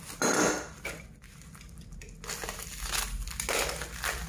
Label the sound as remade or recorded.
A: recorded